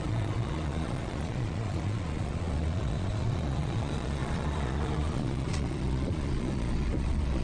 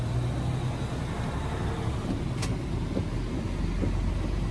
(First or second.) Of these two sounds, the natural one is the second